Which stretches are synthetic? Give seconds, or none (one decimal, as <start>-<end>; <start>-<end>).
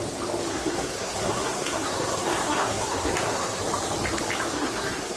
0.5-3.6; 4.5-5.2